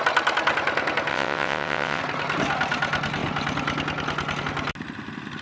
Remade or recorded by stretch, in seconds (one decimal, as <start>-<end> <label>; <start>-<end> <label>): 0.0-1.1 recorded; 1.1-2.0 remade; 2.0-5.4 recorded